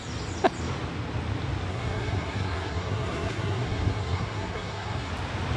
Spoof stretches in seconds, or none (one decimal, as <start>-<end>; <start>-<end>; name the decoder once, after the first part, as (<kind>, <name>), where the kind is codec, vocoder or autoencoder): 1.7-5.1 (codec, SNAC)